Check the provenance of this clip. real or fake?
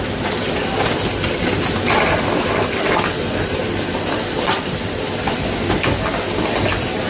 real